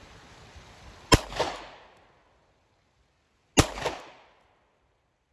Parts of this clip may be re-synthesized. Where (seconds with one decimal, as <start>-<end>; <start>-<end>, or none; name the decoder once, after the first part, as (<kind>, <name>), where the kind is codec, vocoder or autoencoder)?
none